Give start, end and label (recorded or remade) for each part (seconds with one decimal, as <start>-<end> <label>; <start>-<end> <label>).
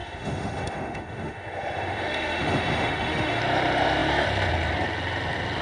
0.0-3.4 remade; 3.4-5.6 recorded